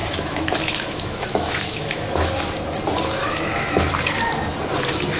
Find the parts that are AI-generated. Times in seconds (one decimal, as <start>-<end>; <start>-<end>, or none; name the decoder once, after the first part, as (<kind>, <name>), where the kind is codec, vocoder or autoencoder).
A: 0.0-2.4 (autoencoder, DAC-VAE); 3.2-3.9